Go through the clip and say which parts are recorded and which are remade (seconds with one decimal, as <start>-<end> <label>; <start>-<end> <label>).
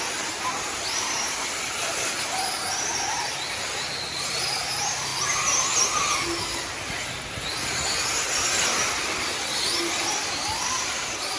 0.0-5.1 remade; 5.1-10.1 recorded; 10.1-11.4 remade